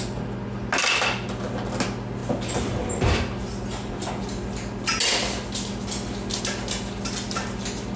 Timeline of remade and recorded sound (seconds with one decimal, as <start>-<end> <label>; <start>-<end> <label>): 0.0-8.0 recorded